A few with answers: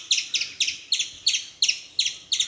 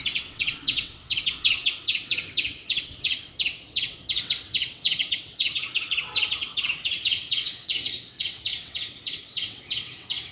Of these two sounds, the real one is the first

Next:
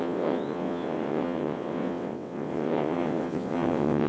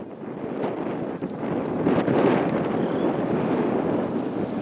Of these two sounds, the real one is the second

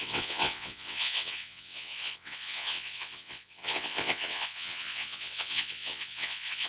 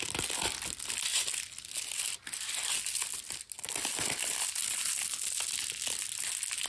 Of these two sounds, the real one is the second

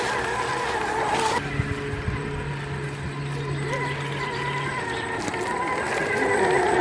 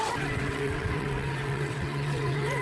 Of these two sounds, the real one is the first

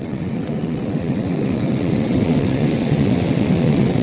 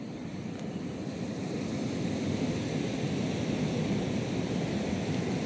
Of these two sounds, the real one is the second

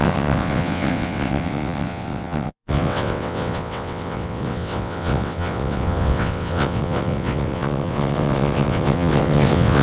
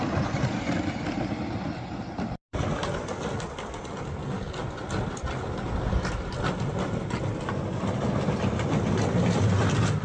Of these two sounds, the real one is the second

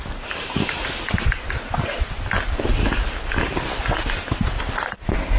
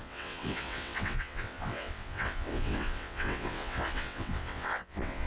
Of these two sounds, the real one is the first